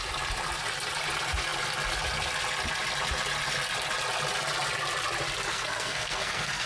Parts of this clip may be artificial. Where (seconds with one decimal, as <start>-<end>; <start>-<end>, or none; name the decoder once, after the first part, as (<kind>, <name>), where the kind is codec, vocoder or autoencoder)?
5.5-6.7 (codec, SNAC)